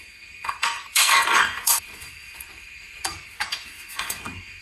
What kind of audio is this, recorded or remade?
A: remade